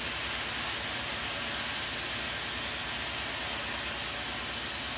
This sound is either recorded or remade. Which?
recorded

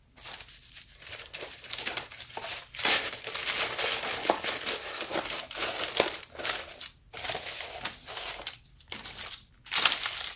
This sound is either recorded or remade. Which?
recorded